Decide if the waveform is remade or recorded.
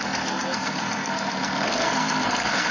remade